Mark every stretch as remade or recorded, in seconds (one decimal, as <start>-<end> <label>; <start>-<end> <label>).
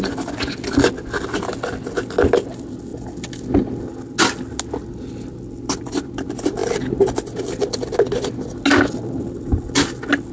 0.0-10.3 recorded